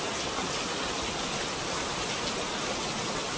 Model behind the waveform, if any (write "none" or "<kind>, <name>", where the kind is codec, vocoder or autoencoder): none